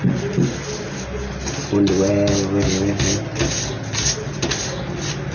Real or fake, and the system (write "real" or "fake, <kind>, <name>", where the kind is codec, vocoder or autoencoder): real